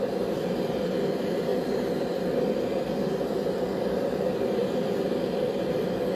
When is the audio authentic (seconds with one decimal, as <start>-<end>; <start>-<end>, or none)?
1.5-3.8